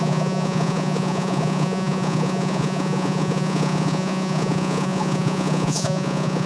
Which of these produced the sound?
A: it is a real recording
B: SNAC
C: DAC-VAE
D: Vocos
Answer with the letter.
D